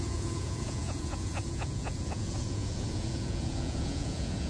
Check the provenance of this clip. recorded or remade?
remade